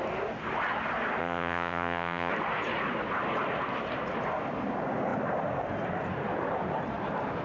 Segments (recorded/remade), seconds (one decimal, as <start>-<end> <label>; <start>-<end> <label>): 0.0-1.2 recorded; 1.2-2.3 remade; 2.3-7.4 recorded